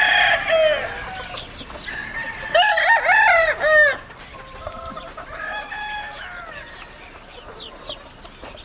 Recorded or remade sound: recorded